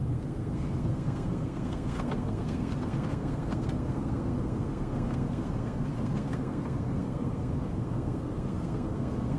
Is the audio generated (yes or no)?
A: yes